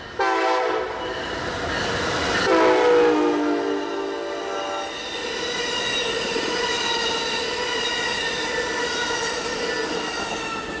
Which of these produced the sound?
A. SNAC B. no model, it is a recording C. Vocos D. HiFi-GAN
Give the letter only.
B